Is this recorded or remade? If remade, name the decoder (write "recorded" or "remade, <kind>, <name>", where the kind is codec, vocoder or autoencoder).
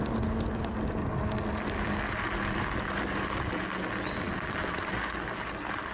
recorded